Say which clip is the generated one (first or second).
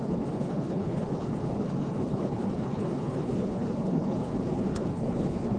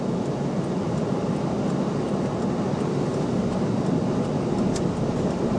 first